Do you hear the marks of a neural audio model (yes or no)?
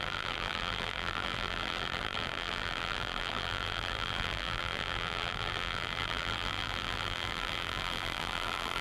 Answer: yes